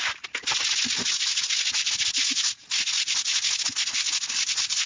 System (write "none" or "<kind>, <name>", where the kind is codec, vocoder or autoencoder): none